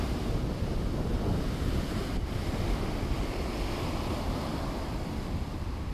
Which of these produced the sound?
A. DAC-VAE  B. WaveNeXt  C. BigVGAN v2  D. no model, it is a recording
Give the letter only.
D